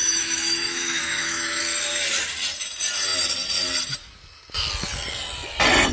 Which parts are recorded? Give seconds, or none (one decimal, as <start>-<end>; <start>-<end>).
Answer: 1.6-5.9